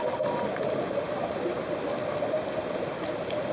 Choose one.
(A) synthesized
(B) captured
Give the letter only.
B